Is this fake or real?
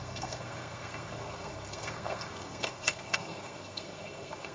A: fake